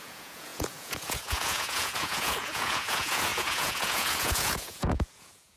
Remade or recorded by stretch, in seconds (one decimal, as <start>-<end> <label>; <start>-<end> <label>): 0.0-5.6 remade